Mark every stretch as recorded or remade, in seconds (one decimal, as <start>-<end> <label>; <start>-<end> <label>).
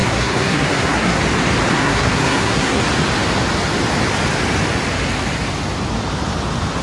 0.0-1.2 remade; 1.2-1.7 recorded; 1.7-2.8 remade; 2.8-6.8 recorded